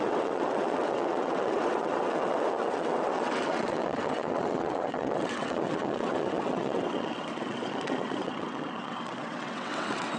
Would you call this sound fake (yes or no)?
yes